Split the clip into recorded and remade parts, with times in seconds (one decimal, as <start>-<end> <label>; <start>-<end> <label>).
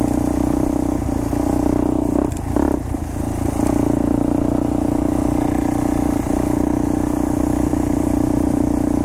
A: 0.0-7.7 recorded; 7.7-8.6 remade; 8.6-9.0 recorded